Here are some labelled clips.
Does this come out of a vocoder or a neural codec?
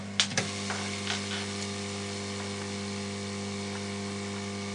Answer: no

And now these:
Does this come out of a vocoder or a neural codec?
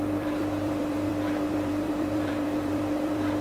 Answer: yes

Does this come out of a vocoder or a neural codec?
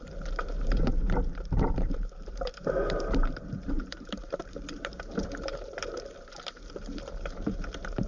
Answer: yes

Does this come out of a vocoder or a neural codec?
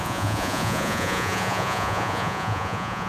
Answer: yes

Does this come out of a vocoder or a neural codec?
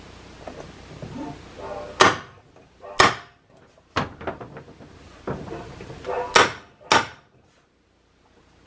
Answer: no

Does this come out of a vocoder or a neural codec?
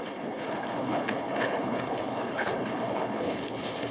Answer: yes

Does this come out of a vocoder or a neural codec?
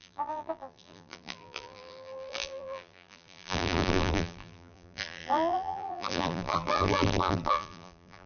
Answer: yes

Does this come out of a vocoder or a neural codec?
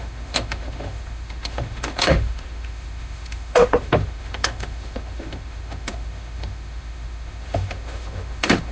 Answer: yes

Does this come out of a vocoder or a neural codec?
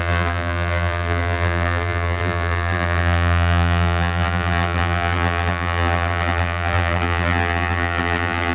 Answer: yes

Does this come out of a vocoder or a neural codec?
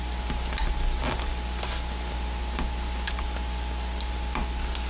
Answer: no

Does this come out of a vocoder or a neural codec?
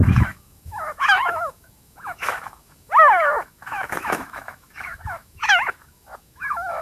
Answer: yes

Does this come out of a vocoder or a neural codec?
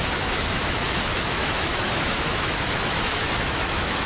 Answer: yes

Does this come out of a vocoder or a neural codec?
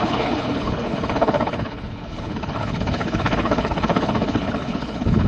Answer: yes